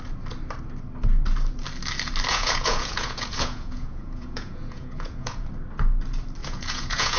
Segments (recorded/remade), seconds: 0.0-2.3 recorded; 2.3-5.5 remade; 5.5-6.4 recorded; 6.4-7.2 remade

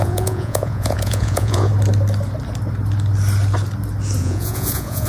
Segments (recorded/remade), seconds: 0.0-1.7 remade; 1.7-4.2 recorded; 4.2-5.1 remade

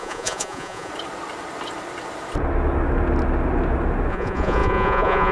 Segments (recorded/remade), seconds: 0.0-0.9 remade; 0.9-4.1 recorded; 4.1-5.3 remade